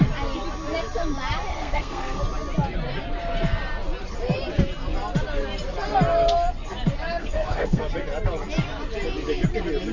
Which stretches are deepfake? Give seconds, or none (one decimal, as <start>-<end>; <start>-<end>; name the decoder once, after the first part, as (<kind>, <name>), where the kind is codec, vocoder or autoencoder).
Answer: 1.5-2.2 (codec, SNAC); 7.2-7.8